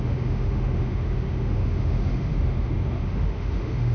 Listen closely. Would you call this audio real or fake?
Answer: fake